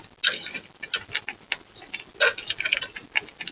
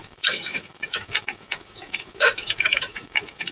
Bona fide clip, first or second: first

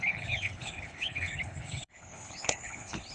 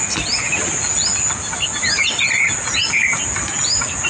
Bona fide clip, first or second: second